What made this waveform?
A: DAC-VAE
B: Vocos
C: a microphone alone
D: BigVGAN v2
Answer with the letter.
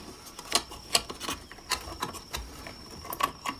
C